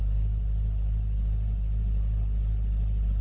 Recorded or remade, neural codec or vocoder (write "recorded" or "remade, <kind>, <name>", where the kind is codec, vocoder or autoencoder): recorded